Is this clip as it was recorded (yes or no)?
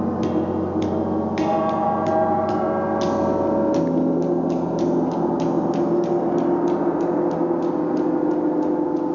yes